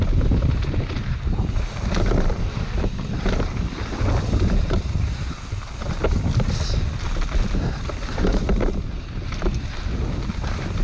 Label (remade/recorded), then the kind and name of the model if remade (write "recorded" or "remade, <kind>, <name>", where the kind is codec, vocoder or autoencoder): recorded